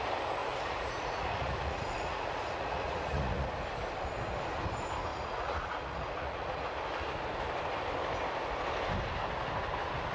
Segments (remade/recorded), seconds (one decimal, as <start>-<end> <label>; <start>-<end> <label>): 0.0-0.4 recorded; 0.4-3.5 remade; 3.5-5.1 recorded; 5.1-6.7 remade; 6.7-10.1 recorded